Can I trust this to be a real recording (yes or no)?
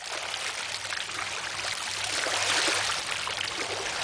yes